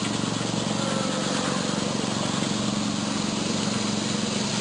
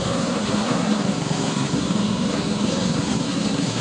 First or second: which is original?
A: first